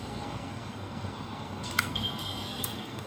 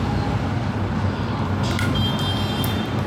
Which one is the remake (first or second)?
first